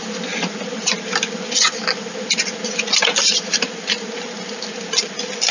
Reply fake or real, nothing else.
real